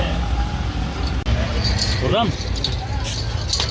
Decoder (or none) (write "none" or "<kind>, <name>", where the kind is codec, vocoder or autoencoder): none